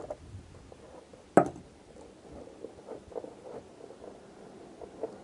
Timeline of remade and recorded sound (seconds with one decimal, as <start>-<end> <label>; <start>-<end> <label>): 0.0-5.2 recorded